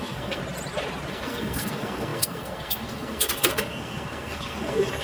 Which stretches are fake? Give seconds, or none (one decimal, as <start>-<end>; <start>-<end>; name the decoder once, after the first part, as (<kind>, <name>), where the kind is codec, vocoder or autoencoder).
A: 0.0-0.4 (codec, SNAC); 1.1-5.0